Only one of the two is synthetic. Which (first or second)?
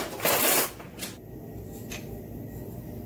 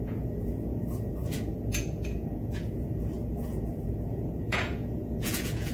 second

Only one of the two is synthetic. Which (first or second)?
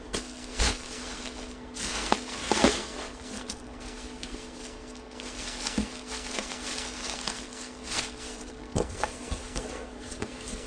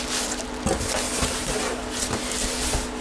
first